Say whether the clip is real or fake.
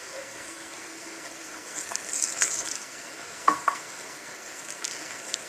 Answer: fake